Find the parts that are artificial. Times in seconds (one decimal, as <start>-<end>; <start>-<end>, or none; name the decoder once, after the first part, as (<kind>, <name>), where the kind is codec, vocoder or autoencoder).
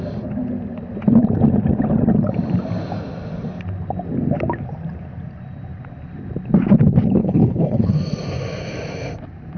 7.2-7.9 (codec, HILCodec)